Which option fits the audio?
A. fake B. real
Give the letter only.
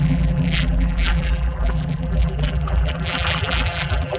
A